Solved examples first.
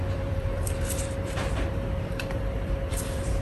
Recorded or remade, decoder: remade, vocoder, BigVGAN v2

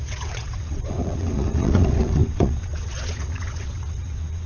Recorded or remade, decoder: remade, vocoder, WaveNeXt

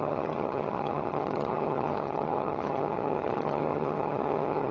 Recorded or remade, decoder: remade, vocoder, HiFi-GAN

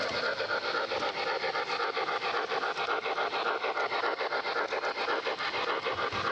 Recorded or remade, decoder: recorded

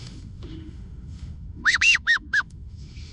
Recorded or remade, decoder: remade, autoencoder, DAC-VAE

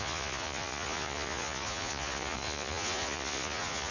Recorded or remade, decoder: remade, vocoder, Vocos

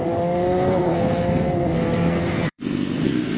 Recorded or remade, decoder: remade, codec, SNAC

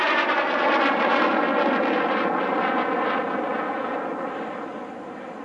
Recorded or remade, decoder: recorded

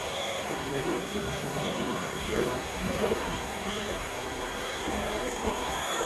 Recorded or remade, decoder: remade, codec, SNAC